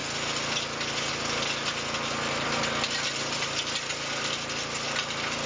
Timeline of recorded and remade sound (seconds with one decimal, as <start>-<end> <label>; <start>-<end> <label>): 0.0-5.5 recorded